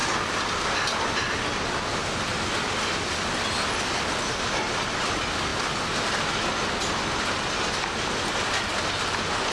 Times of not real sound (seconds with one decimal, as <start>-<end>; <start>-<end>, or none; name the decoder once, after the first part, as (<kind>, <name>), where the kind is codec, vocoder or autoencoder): none